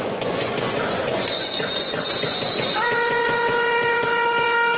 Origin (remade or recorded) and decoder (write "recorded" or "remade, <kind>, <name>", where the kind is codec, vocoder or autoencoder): remade, vocoder, Vocos